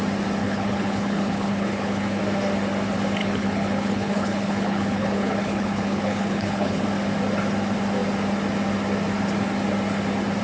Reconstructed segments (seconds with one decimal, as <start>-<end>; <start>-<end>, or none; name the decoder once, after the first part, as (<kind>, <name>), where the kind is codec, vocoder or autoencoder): 0.4-2.2 (codec, HILCodec); 3.2-6.8